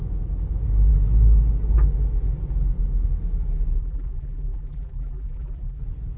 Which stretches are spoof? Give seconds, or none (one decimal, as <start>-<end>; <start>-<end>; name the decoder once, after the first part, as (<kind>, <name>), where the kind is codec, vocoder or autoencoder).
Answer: 3.8-5.8 (vocoder, BigVGAN v2)